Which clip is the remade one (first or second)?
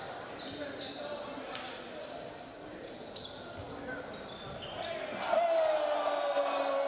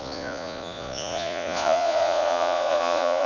second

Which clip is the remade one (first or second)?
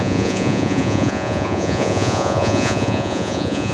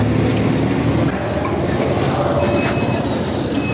first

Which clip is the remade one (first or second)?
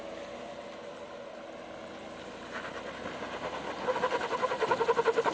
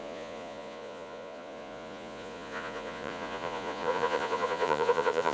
second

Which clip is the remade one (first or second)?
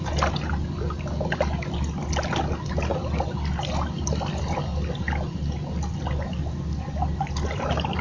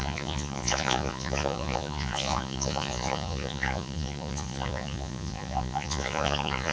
second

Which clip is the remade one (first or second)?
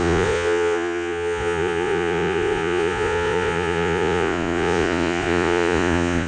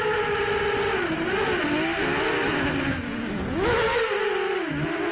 first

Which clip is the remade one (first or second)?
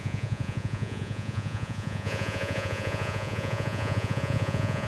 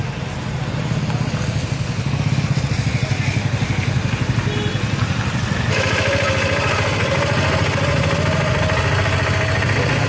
first